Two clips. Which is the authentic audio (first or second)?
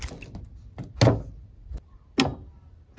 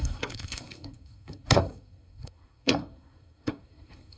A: first